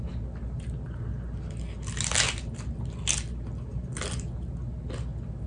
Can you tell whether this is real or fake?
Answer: real